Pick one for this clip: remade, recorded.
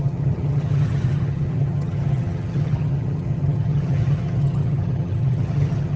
remade